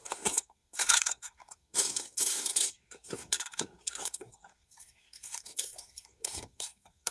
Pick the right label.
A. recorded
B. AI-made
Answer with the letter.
B